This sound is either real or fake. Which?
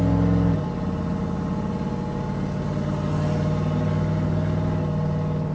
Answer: real